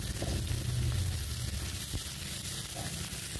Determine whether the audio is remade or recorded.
recorded